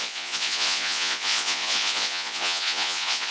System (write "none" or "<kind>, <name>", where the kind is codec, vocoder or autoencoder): vocoder, Vocos